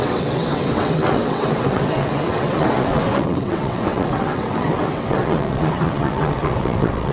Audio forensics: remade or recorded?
remade